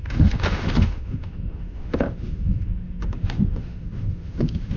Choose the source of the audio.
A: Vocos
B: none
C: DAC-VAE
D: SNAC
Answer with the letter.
C